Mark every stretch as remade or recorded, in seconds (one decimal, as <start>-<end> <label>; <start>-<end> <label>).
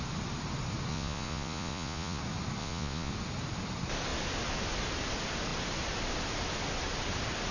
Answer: 0.0-0.9 recorded; 0.9-2.2 remade; 2.2-2.6 recorded; 2.6-3.1 remade; 3.1-7.5 recorded